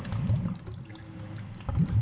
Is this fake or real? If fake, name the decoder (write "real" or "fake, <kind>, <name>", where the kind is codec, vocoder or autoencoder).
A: real